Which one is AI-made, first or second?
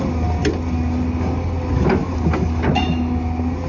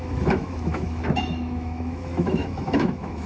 second